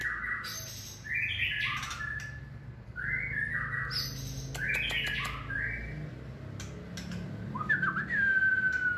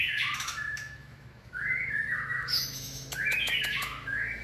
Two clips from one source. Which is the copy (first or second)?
second